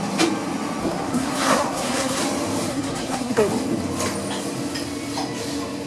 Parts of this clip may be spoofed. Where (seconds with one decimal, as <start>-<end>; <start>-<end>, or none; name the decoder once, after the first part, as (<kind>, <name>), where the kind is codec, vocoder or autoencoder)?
0.8-2.2 (codec, SNAC); 2.7-3.5